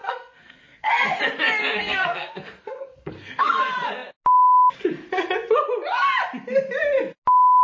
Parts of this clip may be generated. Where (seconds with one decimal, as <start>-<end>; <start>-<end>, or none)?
0.0-1.2; 1.6-3.6